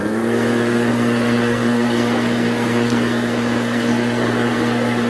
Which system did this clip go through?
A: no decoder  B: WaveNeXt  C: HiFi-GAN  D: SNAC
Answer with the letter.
D